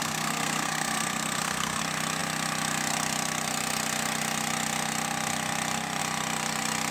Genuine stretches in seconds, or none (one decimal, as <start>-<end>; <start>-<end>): 1.8-6.9